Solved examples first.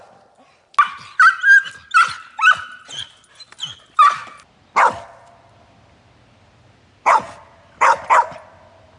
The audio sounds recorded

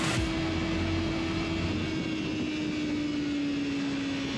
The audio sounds recorded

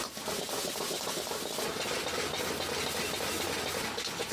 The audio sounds recorded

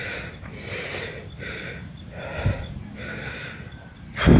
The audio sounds recorded